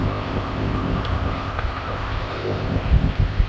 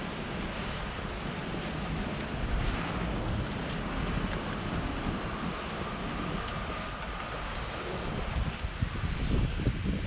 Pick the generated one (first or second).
first